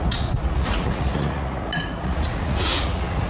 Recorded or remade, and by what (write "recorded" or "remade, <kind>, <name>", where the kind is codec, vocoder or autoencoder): remade, vocoder, Vocos